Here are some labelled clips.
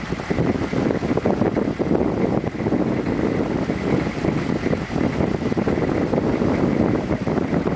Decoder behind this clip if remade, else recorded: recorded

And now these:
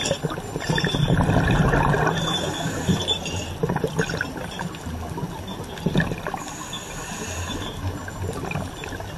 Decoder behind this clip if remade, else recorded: recorded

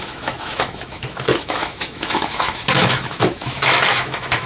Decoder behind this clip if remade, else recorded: remade, autoencoder, DAC-VAE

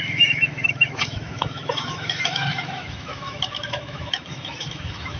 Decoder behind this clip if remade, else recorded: remade, autoencoder, DAC-VAE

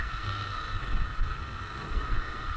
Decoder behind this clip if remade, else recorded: remade, codec, SNAC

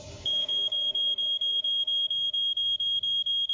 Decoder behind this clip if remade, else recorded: remade, codec, DAC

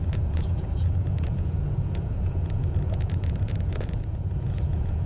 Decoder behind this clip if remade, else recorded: remade, vocoder, Vocos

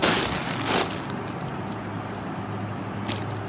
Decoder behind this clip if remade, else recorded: recorded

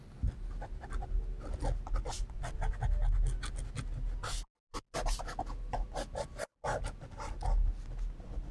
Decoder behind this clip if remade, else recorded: recorded